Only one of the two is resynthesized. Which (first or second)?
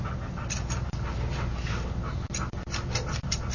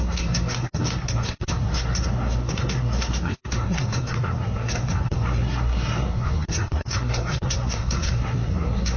second